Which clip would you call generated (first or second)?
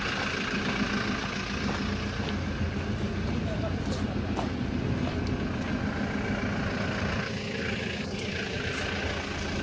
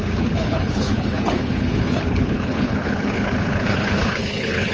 second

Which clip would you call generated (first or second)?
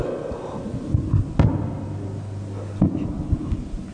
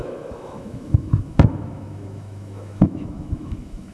second